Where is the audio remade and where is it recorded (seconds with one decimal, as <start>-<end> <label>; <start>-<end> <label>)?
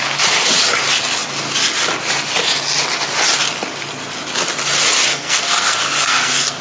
0.0-5.1 recorded; 5.1-6.6 remade